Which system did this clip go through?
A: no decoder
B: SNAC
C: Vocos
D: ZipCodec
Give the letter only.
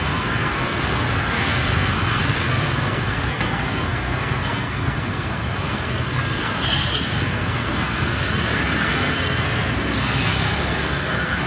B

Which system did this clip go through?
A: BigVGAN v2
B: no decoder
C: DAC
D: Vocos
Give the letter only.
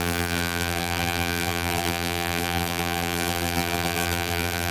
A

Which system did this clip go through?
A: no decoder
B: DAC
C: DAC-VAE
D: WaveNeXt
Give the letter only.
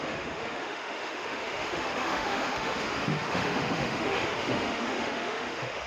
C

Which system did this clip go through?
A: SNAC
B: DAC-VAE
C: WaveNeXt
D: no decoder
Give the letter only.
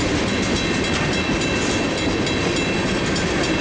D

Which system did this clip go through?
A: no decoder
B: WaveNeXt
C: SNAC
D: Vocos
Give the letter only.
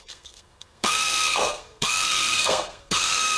C